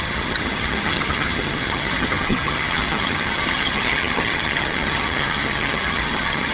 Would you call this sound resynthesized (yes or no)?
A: yes